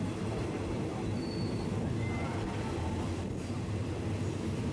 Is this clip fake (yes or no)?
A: no